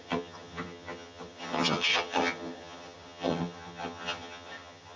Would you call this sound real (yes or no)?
no